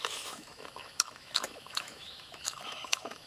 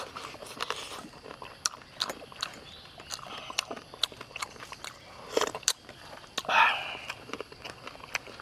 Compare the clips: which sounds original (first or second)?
second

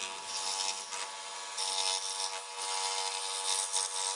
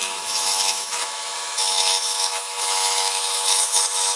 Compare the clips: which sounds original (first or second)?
first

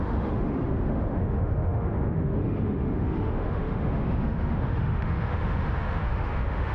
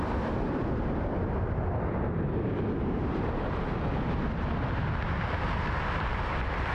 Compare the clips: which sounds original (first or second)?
second